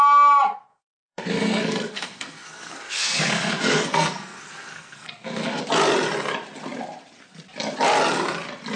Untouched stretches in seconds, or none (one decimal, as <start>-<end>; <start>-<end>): 0.0-0.7; 5.6-8.8